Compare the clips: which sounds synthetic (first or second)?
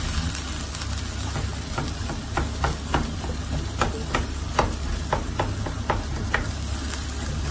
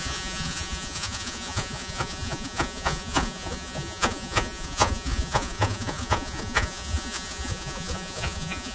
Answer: second